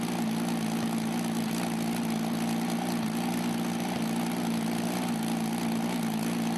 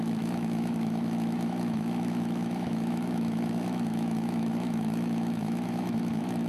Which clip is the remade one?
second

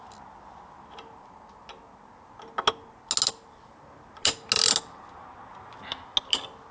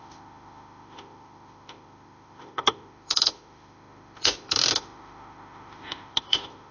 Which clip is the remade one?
second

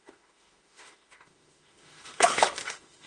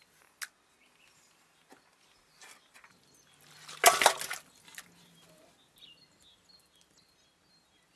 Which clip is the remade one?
first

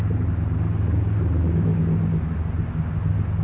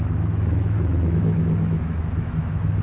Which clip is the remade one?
second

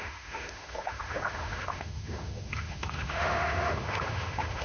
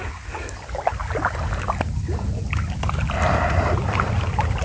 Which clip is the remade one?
first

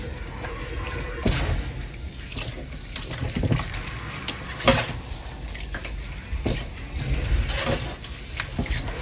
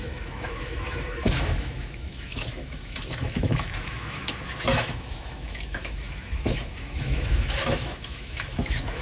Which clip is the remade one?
second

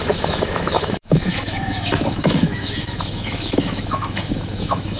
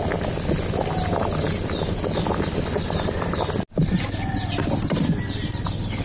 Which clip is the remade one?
first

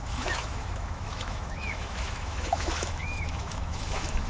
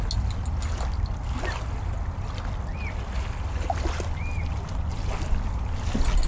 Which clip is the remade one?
first